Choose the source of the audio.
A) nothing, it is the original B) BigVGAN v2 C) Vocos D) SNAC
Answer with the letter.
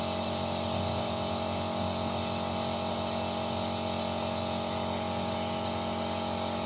A